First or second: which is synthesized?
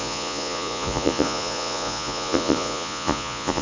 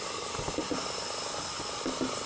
first